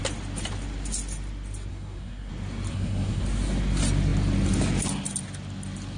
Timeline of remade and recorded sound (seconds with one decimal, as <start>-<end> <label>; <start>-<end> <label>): 0.0-1.7 recorded; 1.7-2.3 remade; 2.3-2.7 recorded; 2.7-3.2 remade; 3.2-6.0 recorded